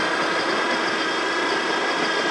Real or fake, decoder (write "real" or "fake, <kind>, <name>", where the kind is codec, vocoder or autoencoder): real